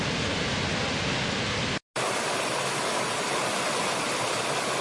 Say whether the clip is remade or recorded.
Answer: recorded